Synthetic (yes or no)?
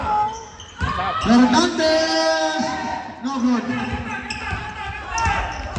no